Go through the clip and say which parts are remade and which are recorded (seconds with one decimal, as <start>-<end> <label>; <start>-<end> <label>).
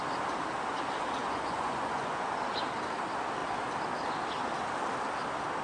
0.0-1.2 recorded; 1.2-2.3 remade; 2.3-5.6 recorded